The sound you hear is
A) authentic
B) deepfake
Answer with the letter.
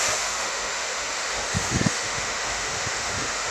B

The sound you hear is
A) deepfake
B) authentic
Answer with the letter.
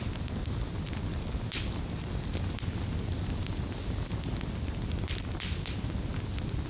B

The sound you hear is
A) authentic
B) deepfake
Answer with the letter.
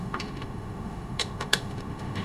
B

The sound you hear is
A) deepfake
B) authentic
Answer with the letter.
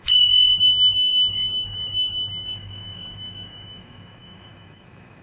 A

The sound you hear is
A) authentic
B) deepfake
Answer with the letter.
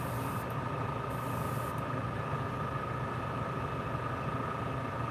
A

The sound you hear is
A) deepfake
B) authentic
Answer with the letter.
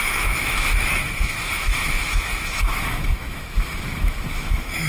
A